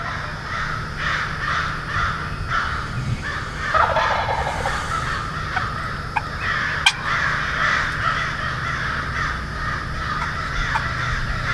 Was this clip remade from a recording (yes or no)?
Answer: no